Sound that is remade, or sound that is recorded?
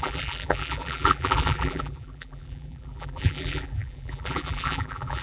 remade